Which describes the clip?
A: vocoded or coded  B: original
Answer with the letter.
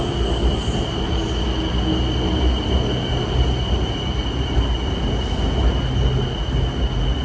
B